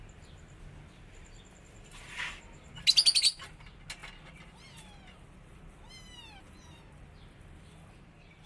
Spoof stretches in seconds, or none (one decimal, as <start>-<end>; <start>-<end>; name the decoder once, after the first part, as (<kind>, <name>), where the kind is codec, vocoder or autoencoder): none